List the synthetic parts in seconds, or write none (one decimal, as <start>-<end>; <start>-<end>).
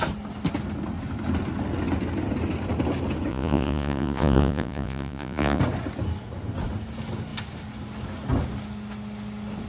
3.3-5.6